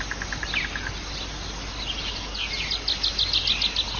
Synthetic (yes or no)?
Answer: no